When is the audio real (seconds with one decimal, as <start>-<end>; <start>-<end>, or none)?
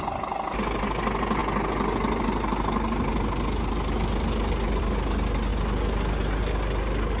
0.0-7.2